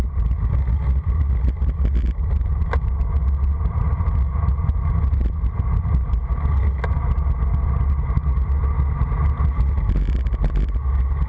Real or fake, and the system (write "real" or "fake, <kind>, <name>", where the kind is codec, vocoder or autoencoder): real